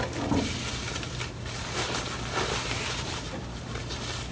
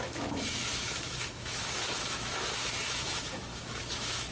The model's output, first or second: second